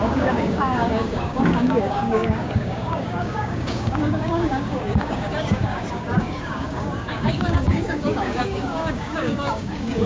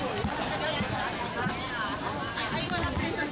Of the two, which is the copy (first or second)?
first